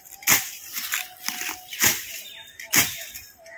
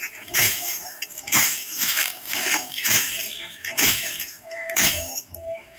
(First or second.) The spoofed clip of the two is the second